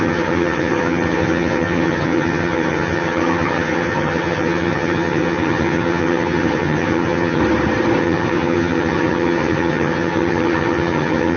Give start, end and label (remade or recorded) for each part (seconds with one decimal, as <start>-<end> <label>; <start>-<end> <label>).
0.0-7.4 remade; 7.4-8.0 recorded; 8.0-11.4 remade